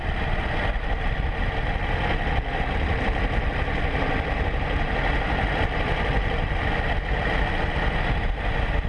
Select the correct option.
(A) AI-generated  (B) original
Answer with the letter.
B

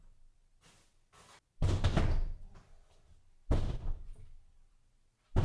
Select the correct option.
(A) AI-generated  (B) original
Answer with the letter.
B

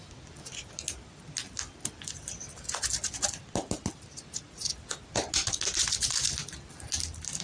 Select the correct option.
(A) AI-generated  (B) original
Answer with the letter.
B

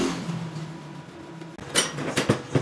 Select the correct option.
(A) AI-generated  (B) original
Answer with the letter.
B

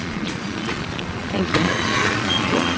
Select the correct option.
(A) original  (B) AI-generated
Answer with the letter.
B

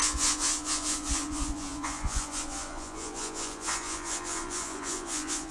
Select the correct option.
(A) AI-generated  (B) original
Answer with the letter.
A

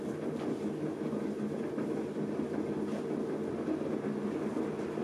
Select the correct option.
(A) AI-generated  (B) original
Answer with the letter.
B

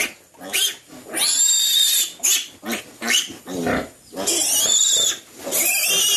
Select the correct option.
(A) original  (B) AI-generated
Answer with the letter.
A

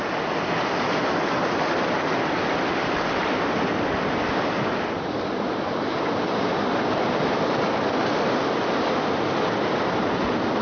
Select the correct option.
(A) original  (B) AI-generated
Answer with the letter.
A